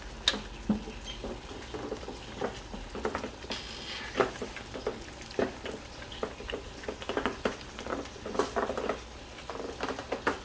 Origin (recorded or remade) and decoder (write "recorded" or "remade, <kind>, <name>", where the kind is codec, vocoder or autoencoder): recorded